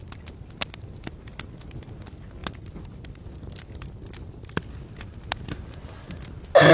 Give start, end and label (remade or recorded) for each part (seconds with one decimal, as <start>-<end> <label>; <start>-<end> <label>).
0.0-6.7 recorded